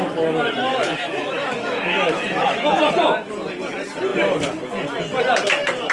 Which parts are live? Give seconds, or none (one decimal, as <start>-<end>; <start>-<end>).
0.0-0.7; 2.8-5.9